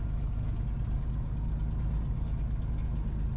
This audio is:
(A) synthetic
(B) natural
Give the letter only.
B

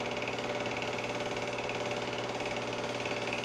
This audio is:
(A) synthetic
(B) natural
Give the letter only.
B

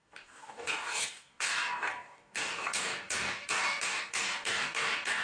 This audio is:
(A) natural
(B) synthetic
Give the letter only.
B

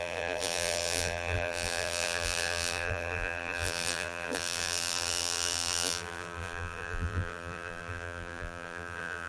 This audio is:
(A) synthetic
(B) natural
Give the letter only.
A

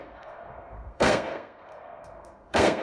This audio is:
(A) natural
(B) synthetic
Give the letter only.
B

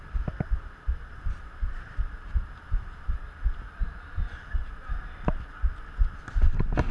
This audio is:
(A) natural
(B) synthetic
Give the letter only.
A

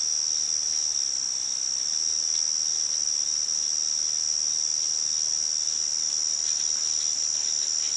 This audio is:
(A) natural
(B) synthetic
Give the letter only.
A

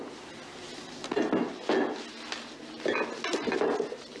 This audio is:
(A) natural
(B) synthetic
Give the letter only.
A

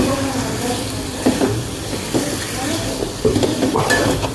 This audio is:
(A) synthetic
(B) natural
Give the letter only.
A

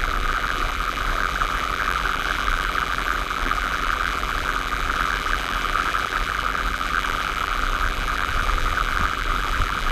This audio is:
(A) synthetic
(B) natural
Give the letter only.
A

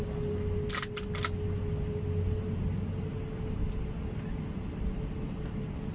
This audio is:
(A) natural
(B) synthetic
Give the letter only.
A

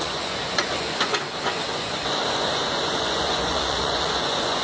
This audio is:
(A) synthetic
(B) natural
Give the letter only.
A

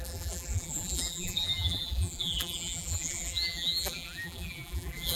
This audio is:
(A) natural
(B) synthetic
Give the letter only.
B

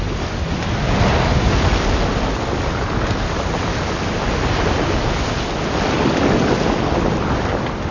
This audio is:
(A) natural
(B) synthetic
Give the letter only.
A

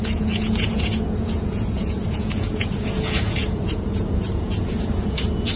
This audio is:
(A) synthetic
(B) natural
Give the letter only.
A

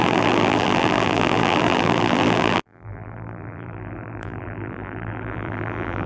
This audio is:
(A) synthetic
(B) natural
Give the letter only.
A